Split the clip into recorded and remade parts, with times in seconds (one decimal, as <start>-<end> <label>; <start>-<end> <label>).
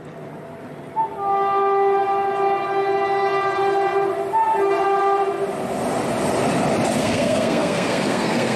0.0-7.0 recorded; 7.0-8.6 remade